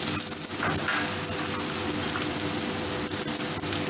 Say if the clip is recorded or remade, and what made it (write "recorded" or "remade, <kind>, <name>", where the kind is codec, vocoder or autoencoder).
recorded